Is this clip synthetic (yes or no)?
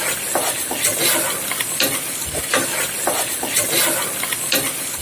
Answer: no